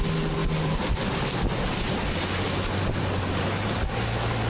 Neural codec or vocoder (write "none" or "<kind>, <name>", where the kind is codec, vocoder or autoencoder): none